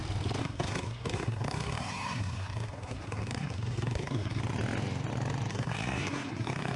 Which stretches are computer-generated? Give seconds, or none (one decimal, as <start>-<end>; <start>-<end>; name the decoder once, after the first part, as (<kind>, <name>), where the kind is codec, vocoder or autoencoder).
0.4-4.4 (codec, SNAC); 5.5-6.8